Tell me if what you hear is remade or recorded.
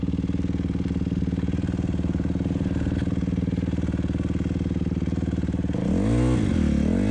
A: recorded